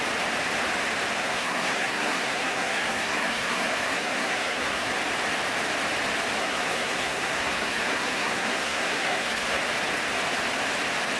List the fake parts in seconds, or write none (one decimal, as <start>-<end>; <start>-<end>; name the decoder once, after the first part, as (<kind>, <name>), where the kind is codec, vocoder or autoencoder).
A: 1.2-4.9 (codec, SNAC); 6.4-9.6